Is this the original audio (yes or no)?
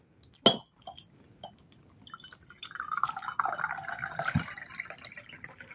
yes